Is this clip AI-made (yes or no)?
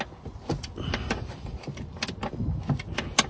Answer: no